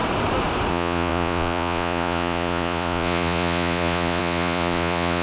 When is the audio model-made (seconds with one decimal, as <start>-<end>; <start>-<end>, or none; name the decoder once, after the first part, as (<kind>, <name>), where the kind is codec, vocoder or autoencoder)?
0.7-5.2 (vocoder, Vocos)